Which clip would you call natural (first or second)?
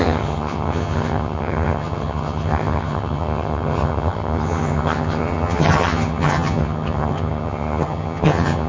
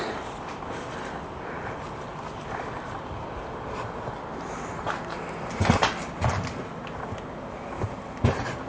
second